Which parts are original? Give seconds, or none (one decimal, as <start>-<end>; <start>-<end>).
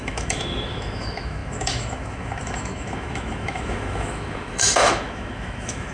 none